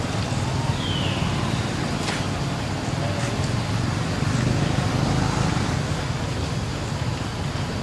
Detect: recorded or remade recorded